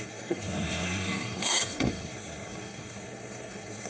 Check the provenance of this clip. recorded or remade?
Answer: remade